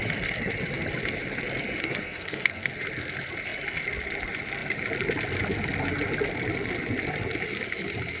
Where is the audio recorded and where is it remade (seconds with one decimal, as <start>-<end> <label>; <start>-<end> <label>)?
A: 0.0-1.8 recorded; 1.8-2.8 remade; 2.8-8.2 recorded